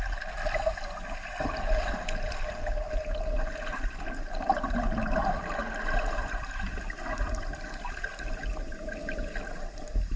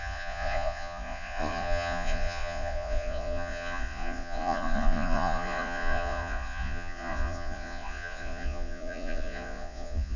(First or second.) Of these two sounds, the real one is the first